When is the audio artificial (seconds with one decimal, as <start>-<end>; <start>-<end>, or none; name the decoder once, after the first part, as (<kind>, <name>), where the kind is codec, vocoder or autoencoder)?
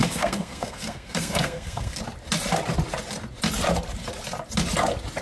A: 0.0-2.0 (codec, SNAC)